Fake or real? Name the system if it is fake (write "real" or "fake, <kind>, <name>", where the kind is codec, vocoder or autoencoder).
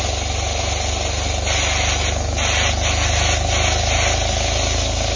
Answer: real